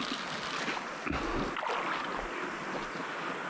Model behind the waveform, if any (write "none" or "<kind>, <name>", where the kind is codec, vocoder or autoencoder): none